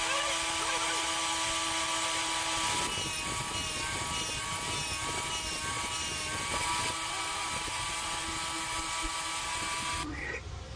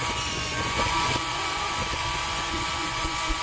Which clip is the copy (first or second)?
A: second